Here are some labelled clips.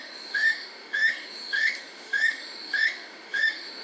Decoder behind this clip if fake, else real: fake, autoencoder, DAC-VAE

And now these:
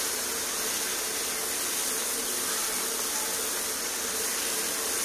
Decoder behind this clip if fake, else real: real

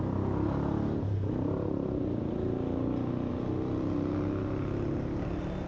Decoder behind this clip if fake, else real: real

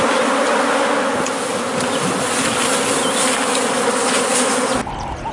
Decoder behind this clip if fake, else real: real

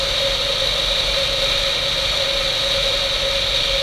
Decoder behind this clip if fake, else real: real